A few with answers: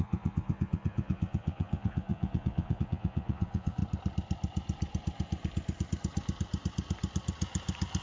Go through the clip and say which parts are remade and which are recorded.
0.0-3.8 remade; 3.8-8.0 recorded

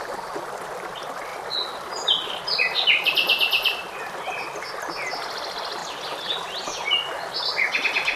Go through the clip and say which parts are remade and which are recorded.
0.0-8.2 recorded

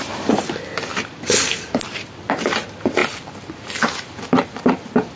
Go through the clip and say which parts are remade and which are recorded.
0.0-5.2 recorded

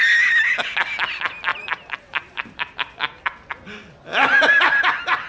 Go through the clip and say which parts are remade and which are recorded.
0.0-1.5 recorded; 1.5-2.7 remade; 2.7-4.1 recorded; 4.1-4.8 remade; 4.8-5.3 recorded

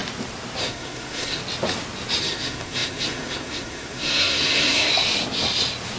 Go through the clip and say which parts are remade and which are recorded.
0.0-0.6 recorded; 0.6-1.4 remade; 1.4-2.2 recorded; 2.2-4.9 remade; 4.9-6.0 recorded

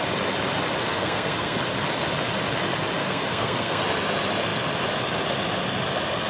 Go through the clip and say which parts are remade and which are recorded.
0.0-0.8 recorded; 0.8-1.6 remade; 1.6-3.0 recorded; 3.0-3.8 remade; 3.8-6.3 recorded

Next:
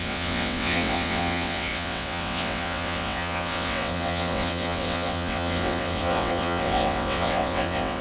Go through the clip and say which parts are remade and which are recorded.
0.0-8.0 remade

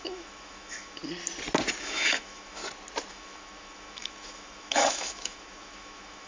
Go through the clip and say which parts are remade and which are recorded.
0.0-1.0 remade; 1.0-1.8 recorded; 1.8-2.6 remade; 2.6-3.1 recorded; 3.1-6.3 remade